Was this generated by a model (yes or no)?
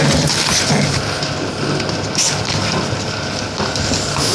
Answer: no